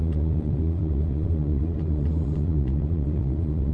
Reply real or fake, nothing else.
fake